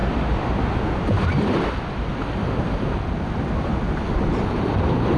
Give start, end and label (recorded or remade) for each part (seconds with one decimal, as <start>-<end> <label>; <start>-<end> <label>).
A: 0.0-5.2 recorded